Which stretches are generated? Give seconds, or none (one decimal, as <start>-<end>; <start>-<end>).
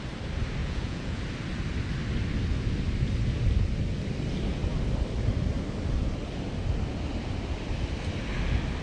0.6-1.2